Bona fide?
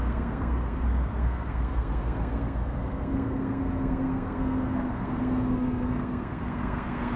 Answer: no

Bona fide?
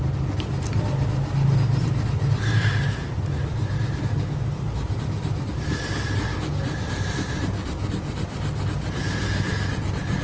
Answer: yes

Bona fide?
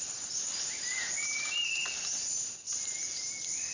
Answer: no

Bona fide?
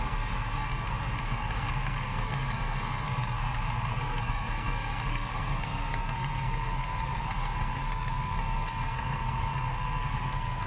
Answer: no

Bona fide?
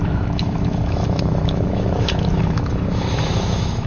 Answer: no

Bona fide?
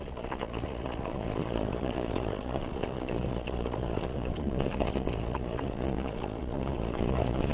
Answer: no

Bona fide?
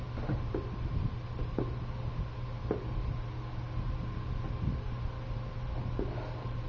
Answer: yes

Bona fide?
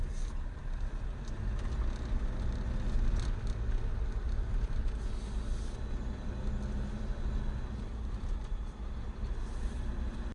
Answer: yes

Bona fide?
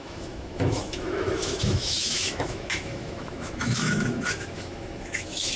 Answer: no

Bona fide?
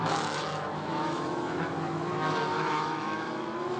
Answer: no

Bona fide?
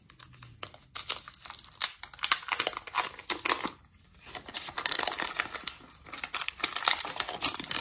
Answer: yes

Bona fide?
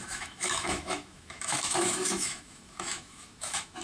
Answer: no